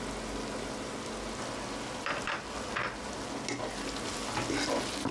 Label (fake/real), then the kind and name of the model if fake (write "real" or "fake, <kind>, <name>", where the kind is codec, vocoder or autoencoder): real